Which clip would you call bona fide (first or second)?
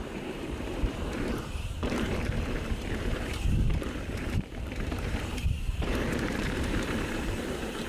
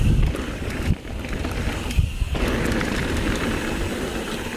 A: second